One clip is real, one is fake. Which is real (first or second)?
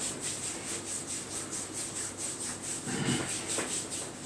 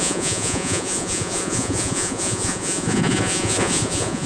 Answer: first